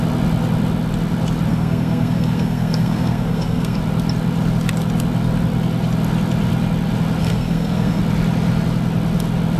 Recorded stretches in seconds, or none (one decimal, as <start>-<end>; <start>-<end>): 0.0-1.5; 3.8-7.2; 8.0-9.6